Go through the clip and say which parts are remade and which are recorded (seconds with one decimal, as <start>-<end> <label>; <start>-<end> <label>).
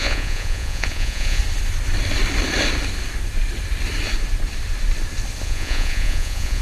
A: 0.0-1.4 remade; 1.4-5.4 recorded; 5.4-6.6 remade